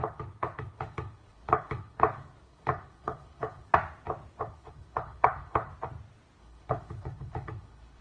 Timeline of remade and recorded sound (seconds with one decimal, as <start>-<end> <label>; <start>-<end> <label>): 0.0-3.7 remade; 3.7-4.4 recorded; 4.4-5.7 remade; 5.7-6.4 recorded; 6.4-8.0 remade